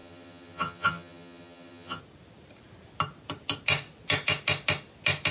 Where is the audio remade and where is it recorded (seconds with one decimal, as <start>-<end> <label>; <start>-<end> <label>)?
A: 0.0-2.0 remade; 2.0-5.3 recorded